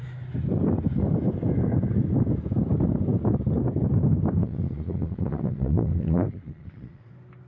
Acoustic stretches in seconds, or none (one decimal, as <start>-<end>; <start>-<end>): 0.0-4.4; 7.1-7.5